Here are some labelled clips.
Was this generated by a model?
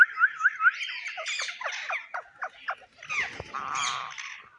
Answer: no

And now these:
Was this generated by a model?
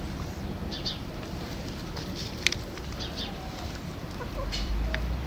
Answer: yes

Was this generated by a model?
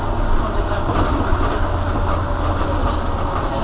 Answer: no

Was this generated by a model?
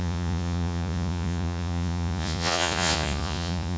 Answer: yes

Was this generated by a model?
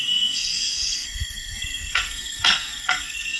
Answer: yes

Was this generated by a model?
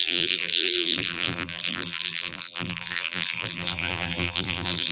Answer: yes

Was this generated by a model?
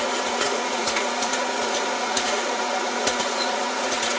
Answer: yes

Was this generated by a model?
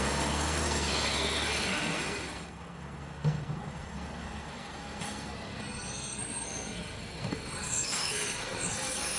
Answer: yes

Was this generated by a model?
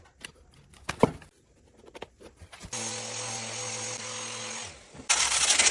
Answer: no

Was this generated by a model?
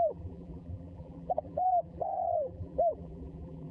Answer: yes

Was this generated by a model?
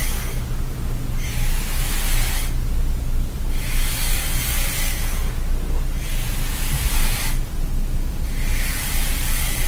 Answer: no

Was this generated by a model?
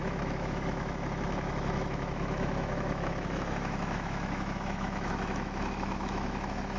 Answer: yes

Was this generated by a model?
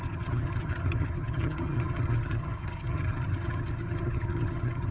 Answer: yes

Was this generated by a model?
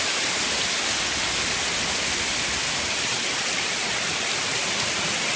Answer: no